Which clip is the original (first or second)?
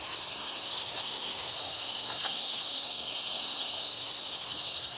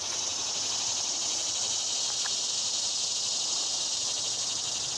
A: second